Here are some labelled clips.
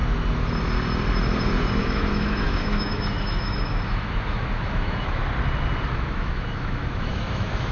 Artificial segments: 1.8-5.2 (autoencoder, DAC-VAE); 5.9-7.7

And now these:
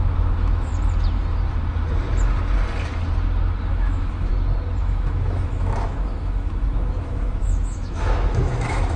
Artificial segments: 0.0-0.7 (autoencoder, DAC-VAE); 3.7-4.3; 4.8-9.0

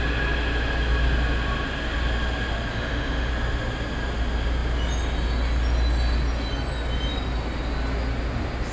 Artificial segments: 2.7-3.3 (autoencoder, DAC-VAE)

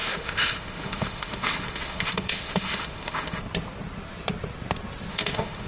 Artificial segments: 0.0-3.4 (autoencoder, DAC-VAE); 5.1-5.7

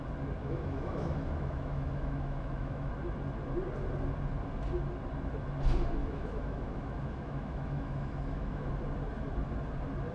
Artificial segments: 0.4-2.9 (autoencoder, DAC-VAE); 6.0-8.7

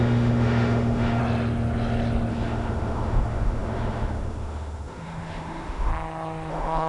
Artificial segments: 0.0-1.2 (autoencoder, DAC-VAE); 2.3-5.9; 6.5-6.9

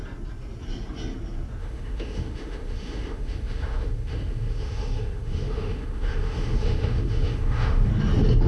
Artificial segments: 1.6-7.9 (autoencoder, DAC-VAE)

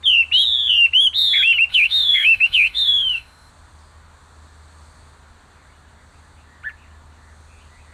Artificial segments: 1.7-3.5 (autoencoder, DAC-VAE)